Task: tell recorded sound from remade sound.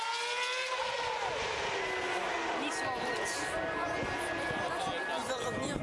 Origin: recorded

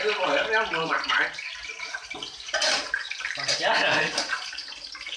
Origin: remade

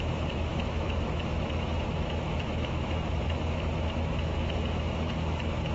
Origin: remade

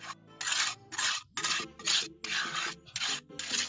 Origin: recorded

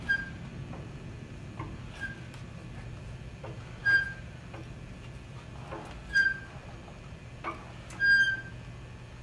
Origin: recorded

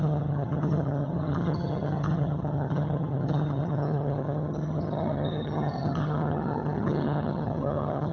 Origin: remade